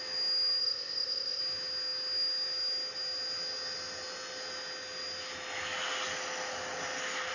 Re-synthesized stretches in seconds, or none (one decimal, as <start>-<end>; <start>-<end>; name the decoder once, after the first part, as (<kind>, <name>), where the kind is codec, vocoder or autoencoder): 0.6-1.4 (codec, ZipCodec)